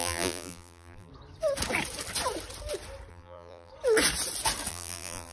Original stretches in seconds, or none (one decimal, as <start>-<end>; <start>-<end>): 1.1-3.1; 3.7-4.7